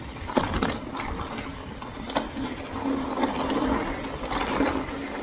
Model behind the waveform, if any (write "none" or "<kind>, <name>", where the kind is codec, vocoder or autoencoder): none